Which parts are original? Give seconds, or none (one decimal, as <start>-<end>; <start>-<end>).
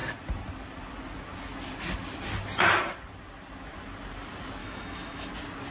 0.0-4.6; 5.3-5.7